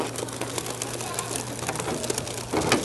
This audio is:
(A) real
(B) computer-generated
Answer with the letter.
A